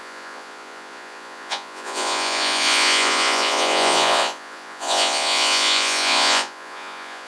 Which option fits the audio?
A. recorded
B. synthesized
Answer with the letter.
B